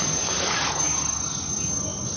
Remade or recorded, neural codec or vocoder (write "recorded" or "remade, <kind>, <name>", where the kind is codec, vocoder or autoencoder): recorded